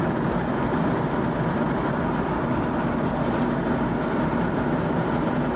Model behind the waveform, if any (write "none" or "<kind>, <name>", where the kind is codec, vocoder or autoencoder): none